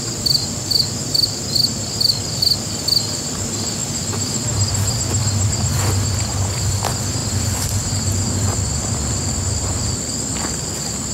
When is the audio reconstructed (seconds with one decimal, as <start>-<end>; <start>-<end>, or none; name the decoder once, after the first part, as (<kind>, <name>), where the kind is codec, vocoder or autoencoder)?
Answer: 7.2-9.3 (vocoder, BigVGAN v2)